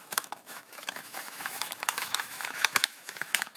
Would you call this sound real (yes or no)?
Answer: no